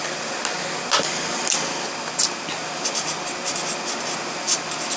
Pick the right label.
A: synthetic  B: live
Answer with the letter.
B